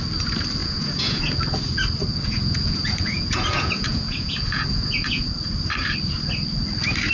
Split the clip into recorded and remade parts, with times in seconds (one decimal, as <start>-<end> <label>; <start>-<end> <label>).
0.0-0.6 recorded; 0.6-1.2 remade; 1.2-2.1 recorded; 2.1-5.2 remade; 5.2-7.1 recorded